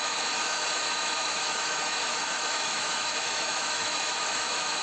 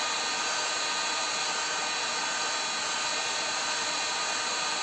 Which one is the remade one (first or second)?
first